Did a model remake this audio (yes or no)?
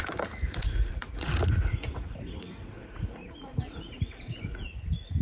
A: yes